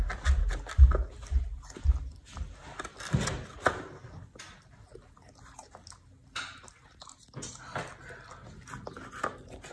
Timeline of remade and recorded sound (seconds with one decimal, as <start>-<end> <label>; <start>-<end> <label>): 0.0-9.7 recorded